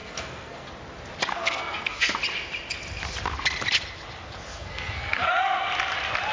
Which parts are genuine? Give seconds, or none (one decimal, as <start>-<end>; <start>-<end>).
0.7-1.3; 2.2-4.5; 5.3-6.3